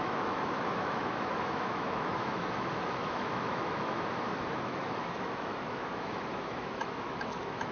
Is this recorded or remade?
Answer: remade